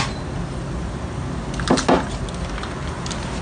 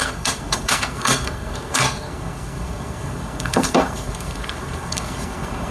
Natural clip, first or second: first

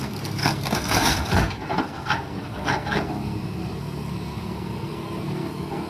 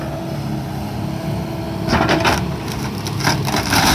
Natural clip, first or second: second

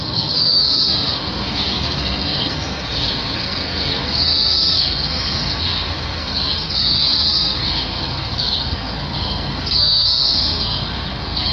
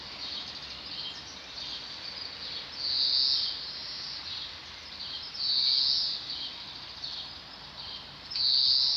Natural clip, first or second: second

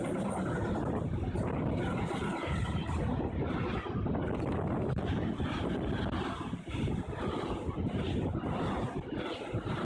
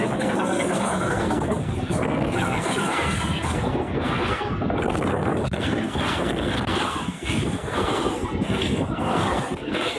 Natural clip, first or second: first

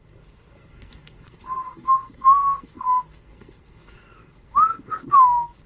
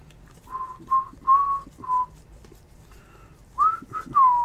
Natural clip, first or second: second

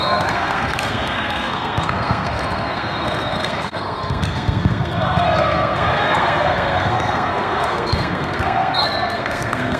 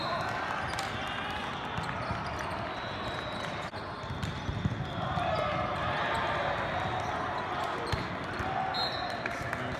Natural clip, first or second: second